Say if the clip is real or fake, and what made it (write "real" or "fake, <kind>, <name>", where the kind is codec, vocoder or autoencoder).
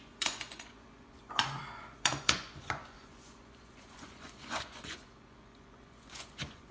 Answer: fake, vocoder, Vocos